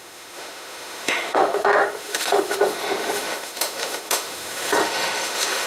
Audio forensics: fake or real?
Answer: fake